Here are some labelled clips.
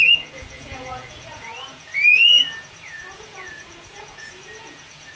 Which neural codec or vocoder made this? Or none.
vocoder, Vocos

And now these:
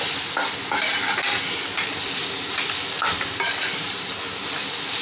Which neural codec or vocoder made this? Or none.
none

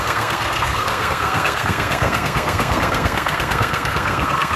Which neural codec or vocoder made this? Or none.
codec, SNAC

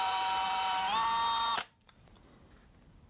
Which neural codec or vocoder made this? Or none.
vocoder, BigVGAN v2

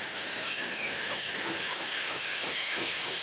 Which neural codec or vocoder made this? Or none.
autoencoder, DAC-VAE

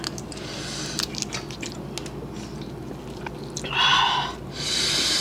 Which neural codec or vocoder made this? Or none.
none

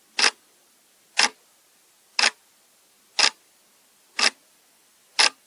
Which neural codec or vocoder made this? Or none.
none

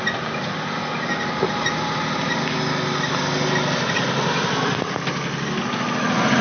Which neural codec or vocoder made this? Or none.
none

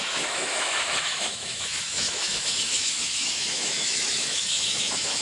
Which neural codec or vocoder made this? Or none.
autoencoder, DAC-VAE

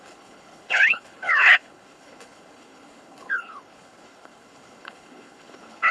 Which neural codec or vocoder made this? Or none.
codec, HILCodec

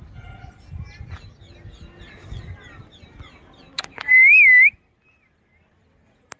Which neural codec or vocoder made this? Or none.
none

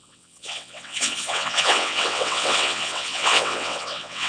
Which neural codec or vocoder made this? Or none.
vocoder, WaveNeXt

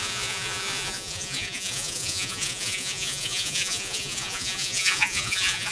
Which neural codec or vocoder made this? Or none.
vocoder, Vocos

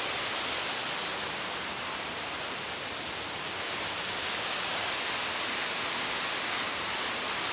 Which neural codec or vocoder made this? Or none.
none